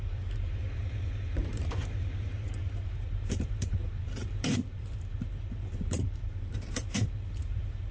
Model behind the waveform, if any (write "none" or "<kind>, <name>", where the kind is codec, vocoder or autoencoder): vocoder, BigVGAN v2